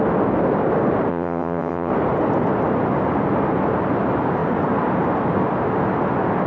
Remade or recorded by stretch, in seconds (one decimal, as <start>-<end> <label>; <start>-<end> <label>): 0.0-1.1 recorded; 1.1-1.9 remade; 1.9-6.5 recorded